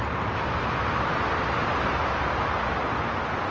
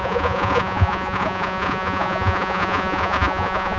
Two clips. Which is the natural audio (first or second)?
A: first